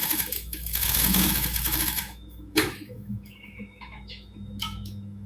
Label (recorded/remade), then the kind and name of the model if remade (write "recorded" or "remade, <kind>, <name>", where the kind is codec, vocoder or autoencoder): remade, autoencoder, DAC-VAE